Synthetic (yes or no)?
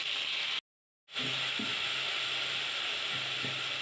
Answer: no